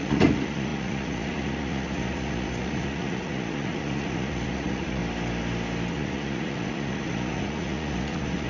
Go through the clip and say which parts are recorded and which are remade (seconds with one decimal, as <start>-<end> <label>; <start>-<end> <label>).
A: 0.0-5.0 remade; 5.0-5.9 recorded; 5.9-8.5 remade